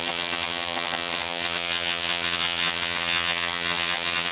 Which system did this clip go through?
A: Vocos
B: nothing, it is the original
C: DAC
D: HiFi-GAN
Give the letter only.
D